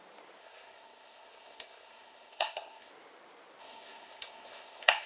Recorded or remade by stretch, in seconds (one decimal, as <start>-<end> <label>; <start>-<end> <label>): 0.0-0.4 recorded; 0.4-2.9 remade; 2.9-3.6 recorded; 3.6-5.1 remade